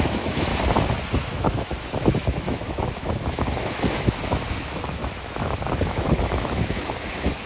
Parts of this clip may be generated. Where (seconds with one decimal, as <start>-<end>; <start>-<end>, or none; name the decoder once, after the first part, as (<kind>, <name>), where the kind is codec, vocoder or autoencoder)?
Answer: 0.0-0.5 (autoencoder, DAC-VAE); 1.3-7.5